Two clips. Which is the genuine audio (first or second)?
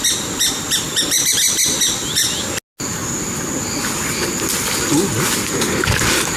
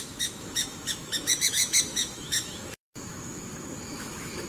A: first